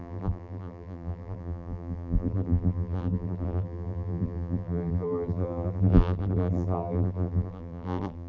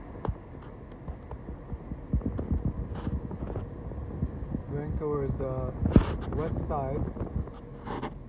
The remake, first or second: first